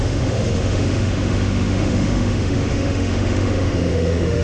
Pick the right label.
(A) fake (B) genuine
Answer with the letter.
A